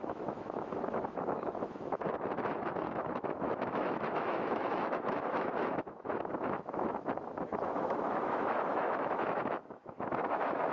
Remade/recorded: remade